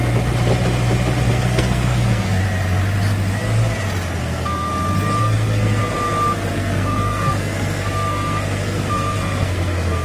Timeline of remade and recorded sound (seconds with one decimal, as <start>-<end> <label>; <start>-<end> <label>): 0.0-1.3 recorded; 1.3-2.4 remade; 2.4-4.2 recorded; 4.2-4.7 remade; 4.7-5.2 recorded; 5.2-5.8 remade; 5.8-6.5 recorded; 6.5-10.0 remade